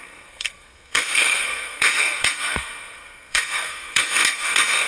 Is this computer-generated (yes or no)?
yes